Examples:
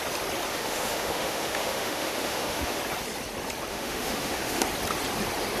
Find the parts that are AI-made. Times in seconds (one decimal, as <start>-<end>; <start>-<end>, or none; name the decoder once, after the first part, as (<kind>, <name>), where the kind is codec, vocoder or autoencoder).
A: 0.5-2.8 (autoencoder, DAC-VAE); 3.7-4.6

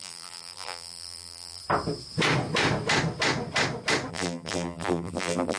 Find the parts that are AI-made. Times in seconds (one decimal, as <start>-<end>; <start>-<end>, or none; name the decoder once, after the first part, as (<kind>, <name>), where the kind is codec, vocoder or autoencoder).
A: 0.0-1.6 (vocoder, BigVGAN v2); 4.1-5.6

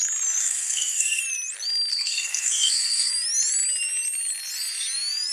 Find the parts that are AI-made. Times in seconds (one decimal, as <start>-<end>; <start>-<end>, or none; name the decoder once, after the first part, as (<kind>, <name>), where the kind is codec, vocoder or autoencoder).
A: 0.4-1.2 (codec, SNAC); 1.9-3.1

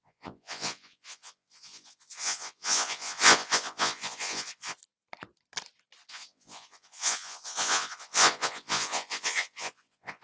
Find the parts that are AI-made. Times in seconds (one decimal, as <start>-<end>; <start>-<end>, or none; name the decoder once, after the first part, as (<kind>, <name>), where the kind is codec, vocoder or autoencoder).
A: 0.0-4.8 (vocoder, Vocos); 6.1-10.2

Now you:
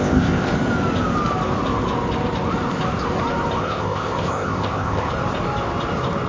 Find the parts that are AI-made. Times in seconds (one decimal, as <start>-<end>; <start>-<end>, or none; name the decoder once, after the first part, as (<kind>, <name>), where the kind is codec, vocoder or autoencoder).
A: 0.0-0.5 (codec, ZipCodec); 3.6-5.1